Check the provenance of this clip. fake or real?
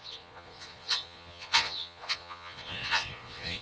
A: fake